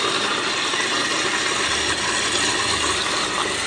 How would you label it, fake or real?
real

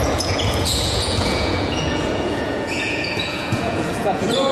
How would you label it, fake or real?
fake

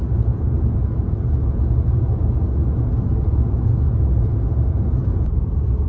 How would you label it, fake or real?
fake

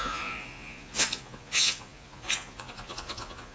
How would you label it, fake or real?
fake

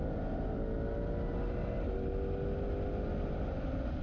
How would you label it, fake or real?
real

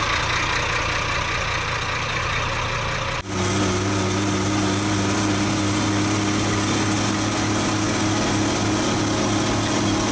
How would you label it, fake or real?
real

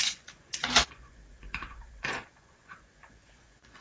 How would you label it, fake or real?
fake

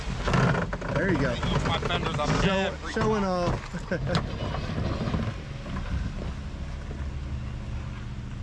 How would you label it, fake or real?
real